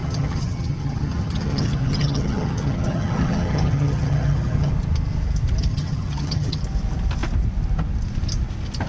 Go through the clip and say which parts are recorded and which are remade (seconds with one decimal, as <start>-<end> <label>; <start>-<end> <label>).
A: 0.0-4.7 remade; 4.7-5.7 recorded; 5.7-6.6 remade; 6.6-8.9 recorded